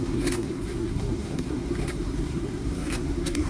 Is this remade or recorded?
remade